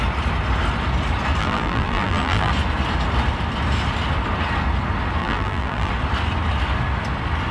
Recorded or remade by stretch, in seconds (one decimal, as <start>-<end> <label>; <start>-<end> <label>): 0.0-1.4 recorded; 1.4-2.5 remade; 2.5-5.2 recorded; 5.2-5.9 remade; 5.9-7.5 recorded